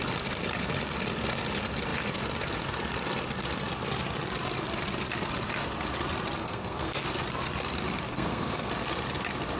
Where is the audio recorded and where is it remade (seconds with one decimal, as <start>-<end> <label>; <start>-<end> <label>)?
0.0-6.4 recorded; 6.4-7.0 remade; 7.0-8.1 recorded; 8.1-8.7 remade; 8.7-9.6 recorded

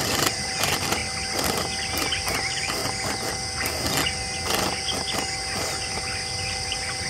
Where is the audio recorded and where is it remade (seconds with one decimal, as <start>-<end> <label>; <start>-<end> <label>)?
0.0-1.0 remade; 1.0-1.6 recorded; 1.6-2.8 remade; 2.8-6.4 recorded; 6.4-7.1 remade

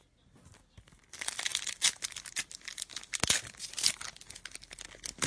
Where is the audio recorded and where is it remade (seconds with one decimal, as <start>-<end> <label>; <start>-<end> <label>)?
0.0-5.3 recorded

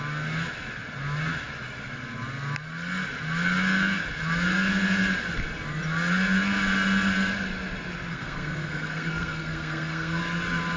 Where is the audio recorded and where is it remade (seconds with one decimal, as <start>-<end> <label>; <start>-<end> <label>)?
0.0-8.1 recorded; 8.1-10.2 remade; 10.2-10.8 recorded

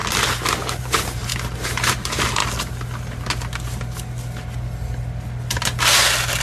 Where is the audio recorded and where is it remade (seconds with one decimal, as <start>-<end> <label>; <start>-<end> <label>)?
0.0-0.5 recorded; 0.5-1.3 remade; 1.3-1.9 recorded; 1.9-2.4 remade; 2.4-6.4 recorded

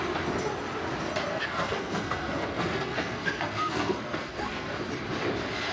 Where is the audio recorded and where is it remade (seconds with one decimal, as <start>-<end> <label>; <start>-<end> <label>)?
0.0-1.3 recorded; 1.3-4.7 remade; 4.7-5.7 recorded

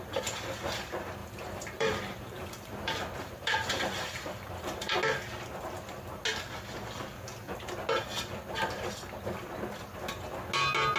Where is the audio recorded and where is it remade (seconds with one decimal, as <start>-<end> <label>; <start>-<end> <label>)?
0.0-1.2 recorded; 1.2-4.9 remade; 4.9-11.0 recorded